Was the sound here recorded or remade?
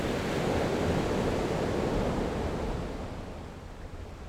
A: remade